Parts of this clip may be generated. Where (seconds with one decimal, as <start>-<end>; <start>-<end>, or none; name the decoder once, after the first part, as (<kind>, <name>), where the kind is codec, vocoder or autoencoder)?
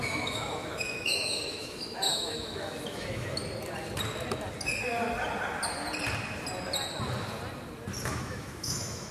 0.0-3.4 (autoencoder, DAC-VAE); 8.0-9.1